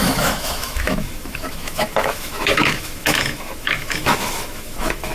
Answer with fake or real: fake